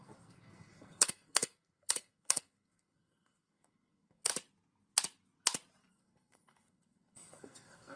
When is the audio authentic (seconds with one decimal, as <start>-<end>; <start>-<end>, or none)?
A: 4.3-5.9